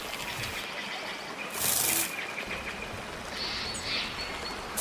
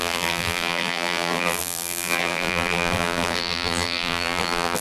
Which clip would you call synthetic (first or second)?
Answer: second